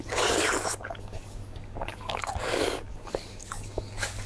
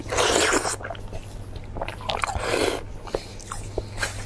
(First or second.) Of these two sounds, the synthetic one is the first